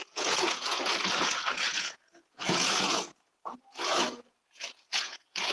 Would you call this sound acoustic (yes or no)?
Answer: no